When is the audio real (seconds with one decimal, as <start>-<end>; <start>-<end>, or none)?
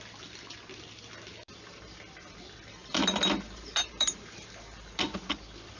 0.0-2.8; 4.5-5.8